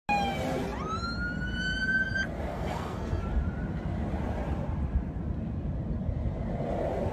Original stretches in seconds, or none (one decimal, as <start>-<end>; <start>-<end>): 0.0-2.5; 3.2-7.1